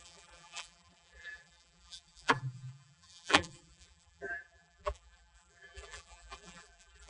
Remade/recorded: remade